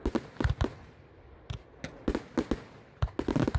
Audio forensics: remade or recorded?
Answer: recorded